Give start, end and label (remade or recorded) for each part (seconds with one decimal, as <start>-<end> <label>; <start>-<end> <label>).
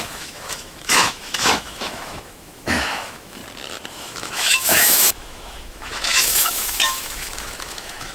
0.0-3.4 remade; 3.4-3.9 recorded; 3.9-8.1 remade